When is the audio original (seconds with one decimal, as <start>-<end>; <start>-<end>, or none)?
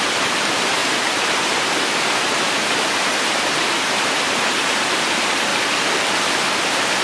5.5-6.3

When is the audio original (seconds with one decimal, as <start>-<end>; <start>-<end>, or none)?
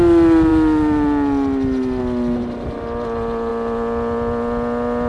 0.0-5.1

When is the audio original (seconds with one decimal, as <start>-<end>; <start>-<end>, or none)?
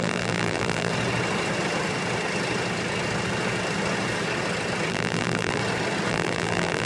0.9-4.9; 5.6-6.1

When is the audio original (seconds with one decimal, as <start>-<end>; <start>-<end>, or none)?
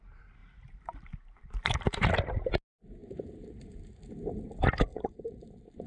0.0-0.4; 2.1-3.0; 3.8-4.9